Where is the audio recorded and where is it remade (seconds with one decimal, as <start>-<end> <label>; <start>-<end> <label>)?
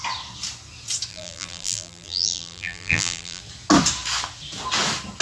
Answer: 0.0-1.1 recorded; 1.1-3.4 remade; 3.4-5.2 recorded